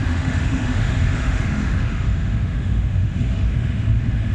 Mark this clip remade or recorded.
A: remade